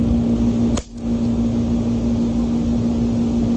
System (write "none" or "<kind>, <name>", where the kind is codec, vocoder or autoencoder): none